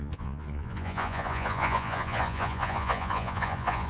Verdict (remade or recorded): remade